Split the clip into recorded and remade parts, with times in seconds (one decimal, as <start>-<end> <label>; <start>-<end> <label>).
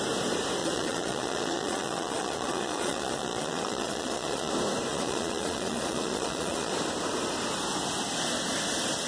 0.0-0.6 recorded; 0.6-4.5 remade; 4.5-4.9 recorded; 4.9-6.7 remade; 6.7-9.1 recorded